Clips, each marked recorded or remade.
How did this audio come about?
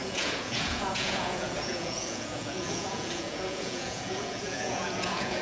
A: remade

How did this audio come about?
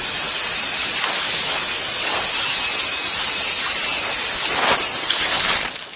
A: recorded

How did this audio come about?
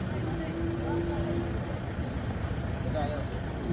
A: recorded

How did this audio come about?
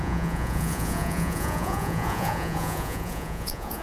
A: remade